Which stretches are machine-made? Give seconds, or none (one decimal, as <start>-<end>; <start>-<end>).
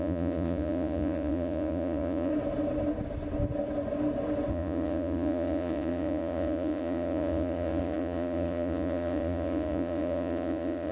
0.0-2.3; 4.5-10.9